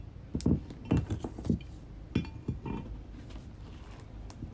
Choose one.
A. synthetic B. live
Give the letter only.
B